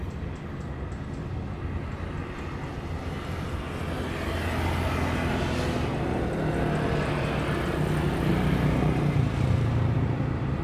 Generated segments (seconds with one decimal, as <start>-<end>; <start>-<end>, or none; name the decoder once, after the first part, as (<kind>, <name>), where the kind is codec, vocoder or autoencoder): 8.3-10.6 (vocoder, BigVGAN v2)